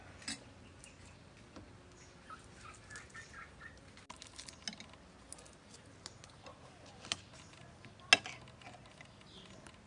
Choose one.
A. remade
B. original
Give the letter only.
B